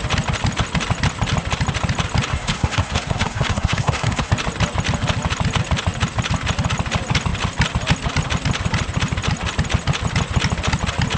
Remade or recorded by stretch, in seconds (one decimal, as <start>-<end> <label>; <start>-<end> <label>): 0.0-2.3 recorded; 2.3-4.3 remade; 4.3-11.2 recorded